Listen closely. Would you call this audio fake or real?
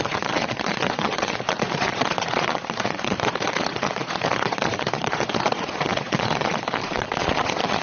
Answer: fake